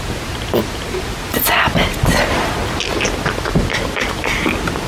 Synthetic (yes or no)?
no